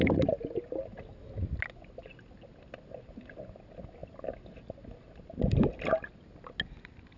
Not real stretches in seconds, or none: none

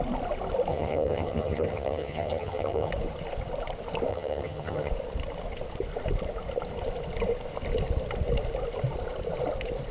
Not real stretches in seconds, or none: 0.7-2.9 (vocoder, HiFi-GAN); 4.1-4.9

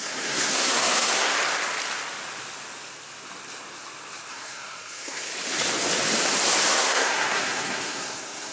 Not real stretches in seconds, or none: 0.0-1.3 (codec, SNAC); 4.3-5.3; 6.7-8.5

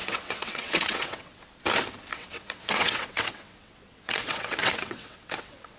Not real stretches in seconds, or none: 0.0-1.4 (vocoder, WaveNeXt); 2.1-5.8